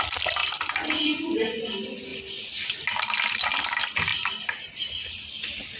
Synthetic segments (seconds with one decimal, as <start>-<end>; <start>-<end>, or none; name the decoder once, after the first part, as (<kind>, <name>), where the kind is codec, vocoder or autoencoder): none